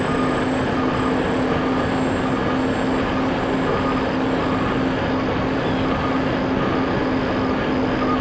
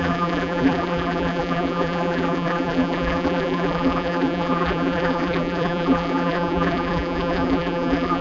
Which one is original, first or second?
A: first